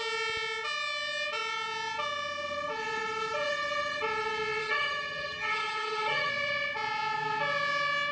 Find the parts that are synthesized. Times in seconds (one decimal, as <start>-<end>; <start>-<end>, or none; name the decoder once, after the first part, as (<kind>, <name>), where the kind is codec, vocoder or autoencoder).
4.6-6.3 (vocoder, HiFi-GAN)